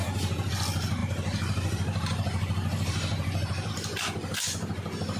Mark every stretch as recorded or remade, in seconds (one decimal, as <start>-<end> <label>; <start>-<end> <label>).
0.0-0.5 remade; 0.5-1.0 recorded; 1.0-3.7 remade; 3.7-5.2 recorded